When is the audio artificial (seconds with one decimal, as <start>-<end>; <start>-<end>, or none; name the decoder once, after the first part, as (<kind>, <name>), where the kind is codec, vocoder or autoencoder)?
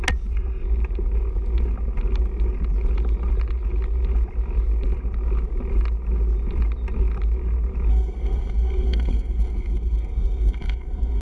7.9-11.2 (codec, SNAC)